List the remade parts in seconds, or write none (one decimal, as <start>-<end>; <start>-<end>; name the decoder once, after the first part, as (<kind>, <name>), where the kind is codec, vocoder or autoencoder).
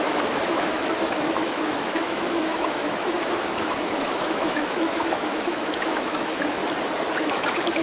0.0-6.6 (autoencoder, DAC-VAE); 7.2-7.8